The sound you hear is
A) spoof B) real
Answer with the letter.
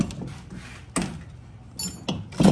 B